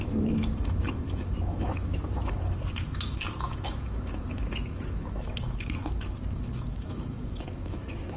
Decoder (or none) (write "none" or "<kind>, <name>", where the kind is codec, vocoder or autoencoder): autoencoder, DAC-VAE